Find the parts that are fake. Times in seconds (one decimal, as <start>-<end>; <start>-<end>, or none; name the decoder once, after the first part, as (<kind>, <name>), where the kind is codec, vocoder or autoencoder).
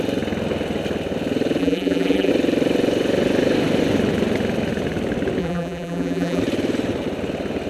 1.6-2.3 (vocoder, BigVGAN v2); 5.4-6.4